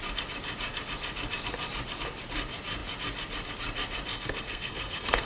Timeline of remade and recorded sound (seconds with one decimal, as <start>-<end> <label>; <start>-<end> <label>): 0.0-4.1 recorded; 4.1-5.3 remade